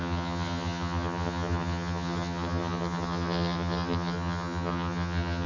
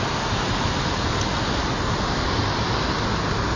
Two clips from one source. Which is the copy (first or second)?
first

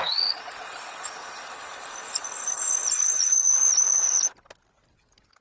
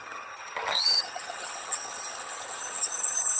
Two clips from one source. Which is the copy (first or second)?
second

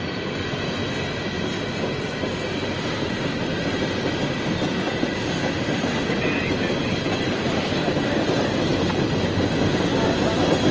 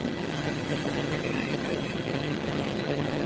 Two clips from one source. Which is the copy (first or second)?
second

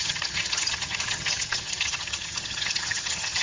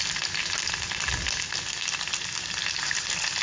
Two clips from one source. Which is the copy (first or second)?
first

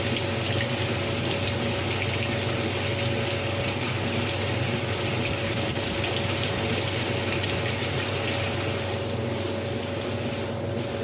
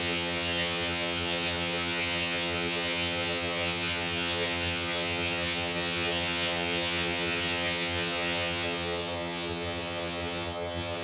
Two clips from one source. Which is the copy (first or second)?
second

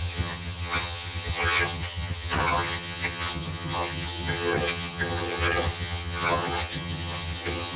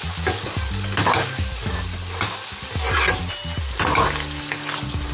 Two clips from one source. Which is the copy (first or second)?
first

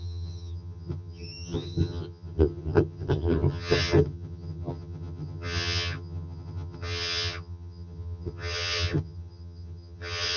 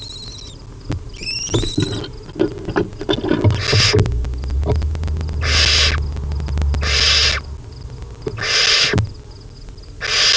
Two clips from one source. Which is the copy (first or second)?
first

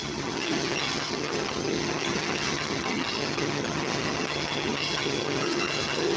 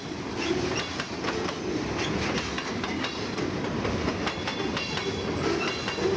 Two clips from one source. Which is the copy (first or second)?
first